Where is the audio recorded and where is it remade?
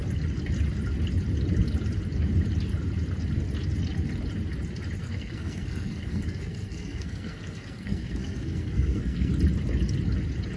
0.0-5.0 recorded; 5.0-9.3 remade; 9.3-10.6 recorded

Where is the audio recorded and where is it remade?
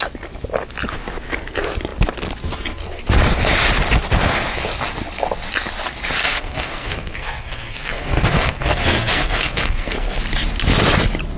0.0-6.2 recorded; 6.2-10.2 remade; 10.2-11.4 recorded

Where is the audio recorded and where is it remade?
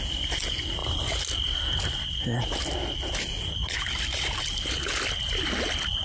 0.0-6.0 recorded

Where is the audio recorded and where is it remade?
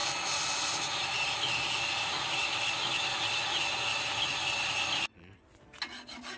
0.0-6.4 recorded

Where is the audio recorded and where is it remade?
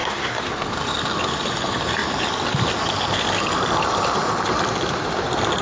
0.0-0.5 remade; 0.5-5.6 recorded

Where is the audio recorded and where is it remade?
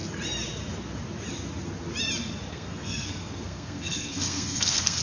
0.0-2.5 recorded; 2.5-5.0 remade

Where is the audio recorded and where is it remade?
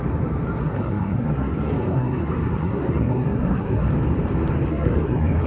0.0-0.6 recorded; 0.6-3.9 remade; 3.9-4.7 recorded; 4.7-5.5 remade